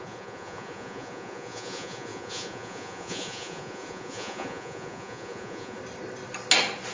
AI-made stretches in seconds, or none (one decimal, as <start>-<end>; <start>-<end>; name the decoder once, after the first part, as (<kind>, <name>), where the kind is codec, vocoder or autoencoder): 0.0-5.8 (vocoder, Vocos)